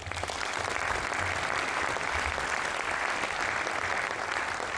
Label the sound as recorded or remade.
recorded